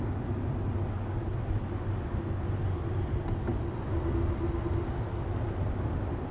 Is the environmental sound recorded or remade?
recorded